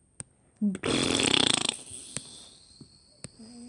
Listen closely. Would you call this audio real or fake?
real